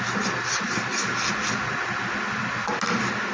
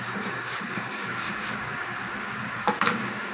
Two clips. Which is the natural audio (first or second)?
first